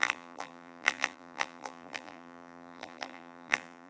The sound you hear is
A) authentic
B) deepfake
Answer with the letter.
B